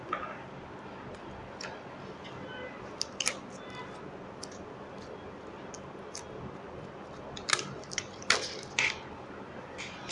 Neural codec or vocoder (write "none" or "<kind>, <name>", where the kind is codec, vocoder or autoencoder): none